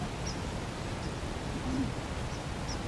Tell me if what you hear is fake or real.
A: real